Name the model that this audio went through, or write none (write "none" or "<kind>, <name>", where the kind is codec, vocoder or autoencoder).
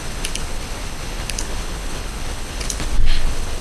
codec, HILCodec